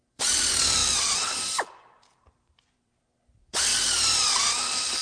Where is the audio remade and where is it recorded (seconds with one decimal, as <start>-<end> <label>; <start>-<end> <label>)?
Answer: 0.0-0.8 remade; 0.8-2.1 recorded; 2.1-3.7 remade; 3.7-4.6 recorded; 4.6-5.0 remade